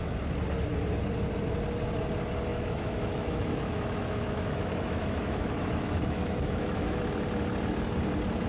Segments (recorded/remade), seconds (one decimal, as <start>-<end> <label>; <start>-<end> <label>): 0.0-2.5 recorded; 2.5-7.0 remade; 7.0-8.5 recorded